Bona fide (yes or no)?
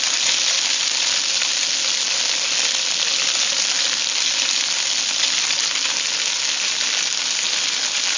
yes